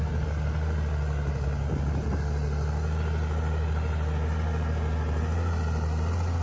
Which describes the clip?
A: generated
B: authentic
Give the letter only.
B